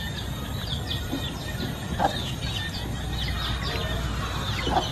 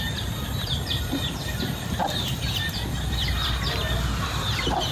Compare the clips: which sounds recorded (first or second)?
first